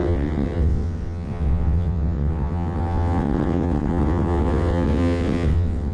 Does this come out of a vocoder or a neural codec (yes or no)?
yes